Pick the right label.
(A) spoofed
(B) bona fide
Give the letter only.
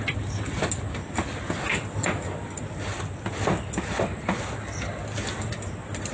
B